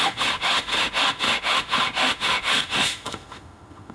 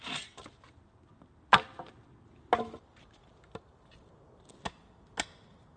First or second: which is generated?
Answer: first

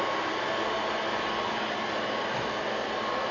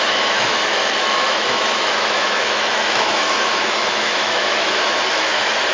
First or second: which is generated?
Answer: second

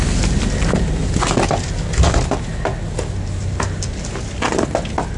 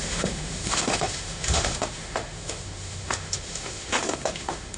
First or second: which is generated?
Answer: second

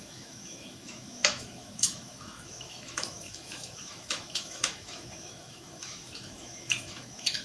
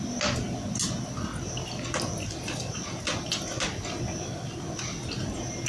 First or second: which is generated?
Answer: first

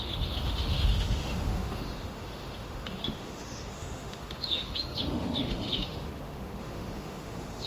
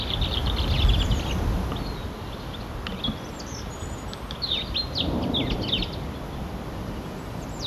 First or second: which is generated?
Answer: first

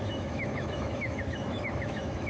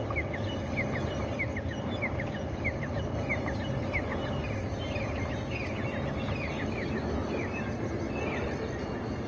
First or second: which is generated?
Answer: first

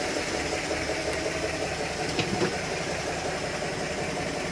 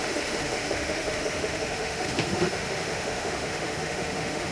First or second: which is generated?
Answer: second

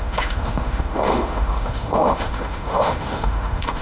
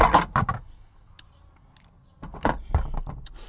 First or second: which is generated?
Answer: first